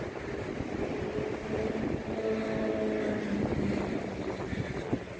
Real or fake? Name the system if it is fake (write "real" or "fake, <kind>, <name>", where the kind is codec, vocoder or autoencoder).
real